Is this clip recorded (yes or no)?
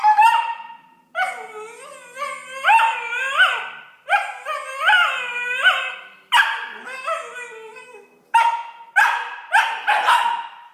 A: yes